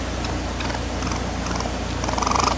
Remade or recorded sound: recorded